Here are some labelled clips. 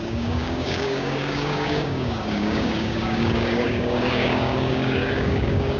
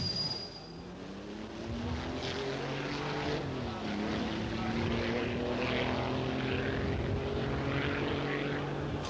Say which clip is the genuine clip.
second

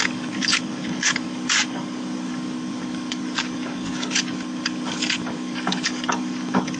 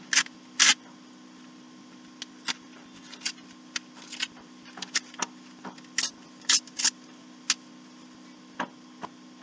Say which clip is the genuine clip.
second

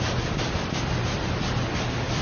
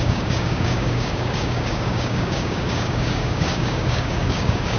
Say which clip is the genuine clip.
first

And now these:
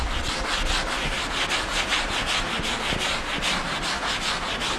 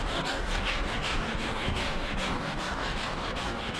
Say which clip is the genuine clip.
first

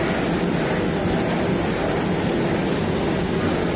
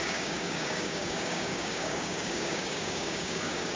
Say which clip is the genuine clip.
first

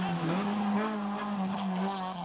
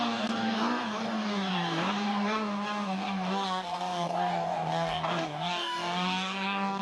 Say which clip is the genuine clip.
first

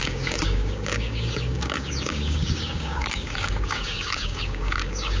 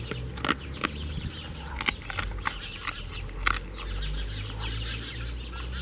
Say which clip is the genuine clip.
second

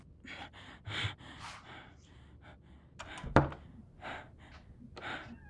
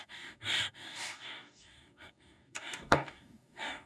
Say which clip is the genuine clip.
first